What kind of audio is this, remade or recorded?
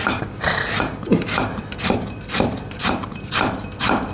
remade